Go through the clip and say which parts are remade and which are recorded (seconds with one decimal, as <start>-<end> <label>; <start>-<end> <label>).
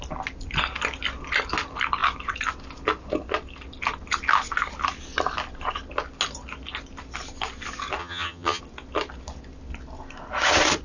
0.0-8.0 recorded; 8.0-8.6 remade; 8.6-10.8 recorded